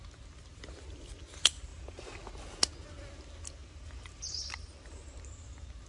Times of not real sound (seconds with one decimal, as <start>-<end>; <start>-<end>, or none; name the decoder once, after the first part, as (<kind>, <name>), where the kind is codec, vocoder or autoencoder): 1.7-2.3 (vocoder, BigVGAN v2); 3.6-5.2